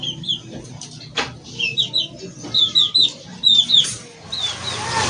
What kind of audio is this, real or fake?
real